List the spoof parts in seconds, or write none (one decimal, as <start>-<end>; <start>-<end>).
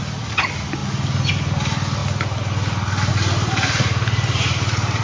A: none